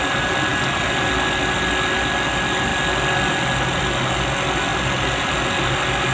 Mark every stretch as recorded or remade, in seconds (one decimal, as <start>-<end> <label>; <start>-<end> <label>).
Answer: 0.0-4.7 recorded; 4.7-5.3 remade; 5.3-6.1 recorded